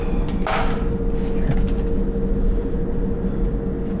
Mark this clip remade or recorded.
recorded